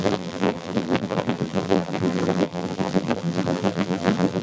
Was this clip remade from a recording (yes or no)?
yes